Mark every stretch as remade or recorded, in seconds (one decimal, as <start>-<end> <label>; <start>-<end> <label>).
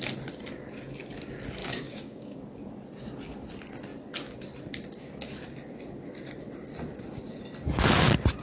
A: 0.0-1.6 recorded; 1.6-2.4 remade; 2.4-8.4 recorded